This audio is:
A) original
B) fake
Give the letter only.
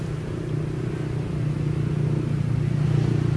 A